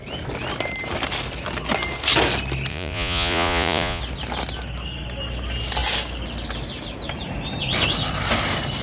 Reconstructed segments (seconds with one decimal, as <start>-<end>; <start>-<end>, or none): 2.7-4.0